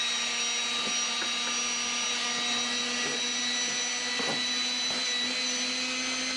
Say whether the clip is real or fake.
real